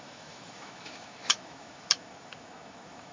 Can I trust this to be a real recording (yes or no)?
no